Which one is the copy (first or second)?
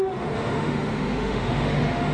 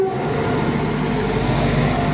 first